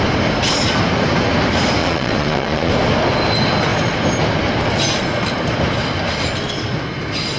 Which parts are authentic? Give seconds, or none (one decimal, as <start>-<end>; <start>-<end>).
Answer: 0.0-1.8; 2.7-7.4